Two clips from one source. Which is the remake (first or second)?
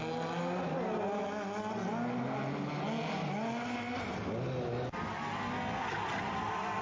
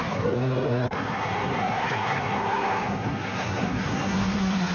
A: second